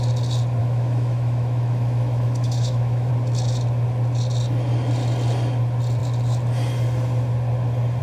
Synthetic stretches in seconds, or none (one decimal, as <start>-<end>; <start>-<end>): 0.6-3.1